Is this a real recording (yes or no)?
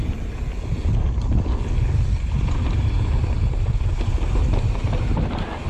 yes